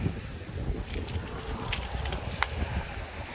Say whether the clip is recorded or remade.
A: recorded